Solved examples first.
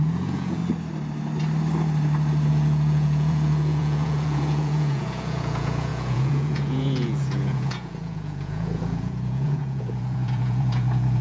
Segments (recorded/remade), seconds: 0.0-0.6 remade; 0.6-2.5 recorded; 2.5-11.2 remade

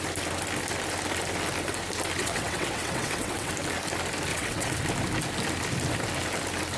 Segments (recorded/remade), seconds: 0.0-2.2 recorded; 2.2-3.5 remade; 3.5-4.3 recorded; 4.3-4.8 remade; 4.8-6.8 recorded

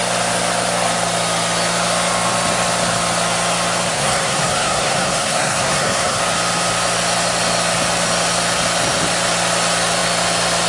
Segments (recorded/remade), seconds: 0.0-3.9 recorded; 3.9-6.2 remade; 6.2-10.7 recorded

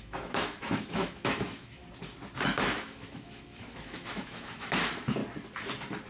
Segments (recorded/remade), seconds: 0.0-1.8 remade; 1.8-2.8 recorded; 2.8-5.2 remade; 5.2-6.1 recorded

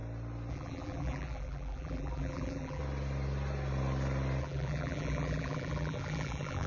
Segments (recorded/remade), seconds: 0.0-0.5 recorded; 0.5-2.8 remade; 2.8-4.4 recorded; 4.4-6.7 remade